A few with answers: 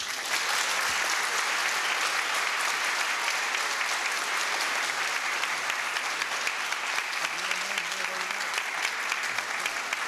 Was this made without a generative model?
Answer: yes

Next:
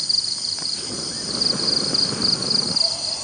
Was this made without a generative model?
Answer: yes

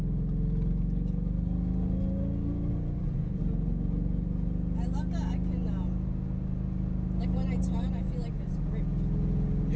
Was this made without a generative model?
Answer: yes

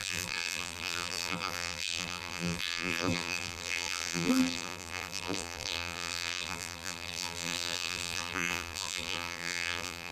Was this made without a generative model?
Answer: no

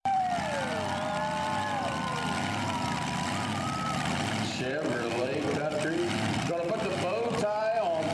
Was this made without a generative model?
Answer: no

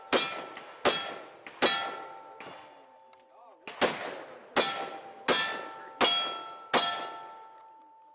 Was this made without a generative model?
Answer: yes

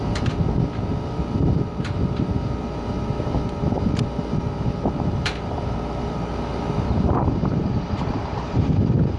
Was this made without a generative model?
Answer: no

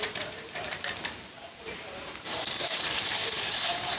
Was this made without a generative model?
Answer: no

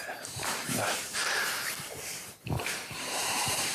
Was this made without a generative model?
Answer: no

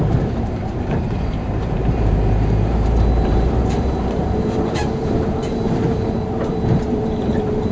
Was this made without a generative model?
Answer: no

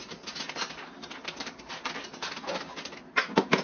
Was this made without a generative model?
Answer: yes